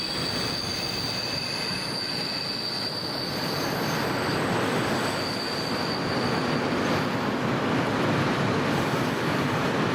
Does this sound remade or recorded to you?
recorded